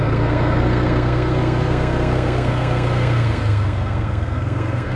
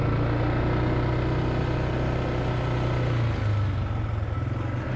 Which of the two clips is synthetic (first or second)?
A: first